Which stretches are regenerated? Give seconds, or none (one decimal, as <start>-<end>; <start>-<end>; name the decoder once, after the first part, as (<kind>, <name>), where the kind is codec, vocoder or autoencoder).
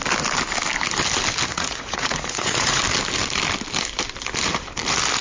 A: 1.5-2.8 (vocoder, Vocos)